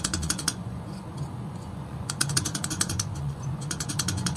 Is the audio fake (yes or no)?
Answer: yes